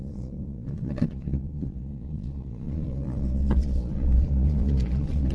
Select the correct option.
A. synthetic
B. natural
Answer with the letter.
A